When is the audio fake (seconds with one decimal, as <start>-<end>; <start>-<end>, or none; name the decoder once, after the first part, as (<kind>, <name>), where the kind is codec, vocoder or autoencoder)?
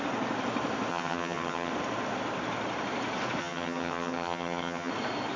0.9-1.7 (vocoder, HiFi-GAN); 3.4-4.9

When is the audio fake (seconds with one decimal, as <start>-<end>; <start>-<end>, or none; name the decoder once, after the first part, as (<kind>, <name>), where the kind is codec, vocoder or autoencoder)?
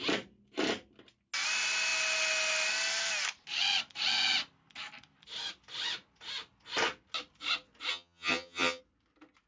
7.9-8.8 (vocoder, HiFi-GAN)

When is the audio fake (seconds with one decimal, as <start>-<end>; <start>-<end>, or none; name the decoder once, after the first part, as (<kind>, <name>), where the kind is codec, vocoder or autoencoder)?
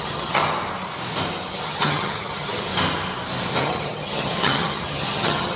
0.0-0.4 (vocoder, HiFi-GAN); 1.5-2.7; 3.6-5.6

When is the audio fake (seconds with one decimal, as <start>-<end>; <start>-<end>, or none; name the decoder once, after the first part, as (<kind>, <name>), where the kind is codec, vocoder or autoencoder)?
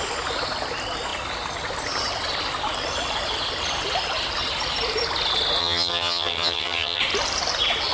5.6-7.0 (vocoder, HiFi-GAN)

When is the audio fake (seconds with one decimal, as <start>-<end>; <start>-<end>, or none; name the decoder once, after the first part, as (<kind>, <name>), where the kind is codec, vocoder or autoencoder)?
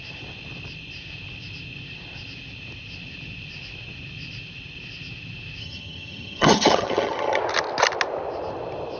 5.6-7.4 (vocoder, HiFi-GAN)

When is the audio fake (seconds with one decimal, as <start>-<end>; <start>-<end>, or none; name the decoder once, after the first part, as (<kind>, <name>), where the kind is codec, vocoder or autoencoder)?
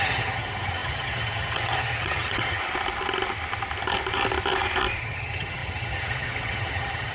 0.0-2.6 (vocoder, HiFi-GAN); 5.0-7.1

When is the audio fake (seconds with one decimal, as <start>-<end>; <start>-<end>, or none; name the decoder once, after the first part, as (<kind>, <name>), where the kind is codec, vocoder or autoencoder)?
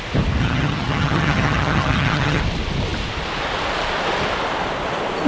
0.4-2.4 (vocoder, HiFi-GAN)